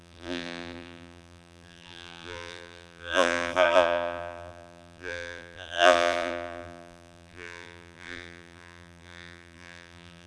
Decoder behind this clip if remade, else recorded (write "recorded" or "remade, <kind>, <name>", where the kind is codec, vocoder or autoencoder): remade, vocoder, BigVGAN v2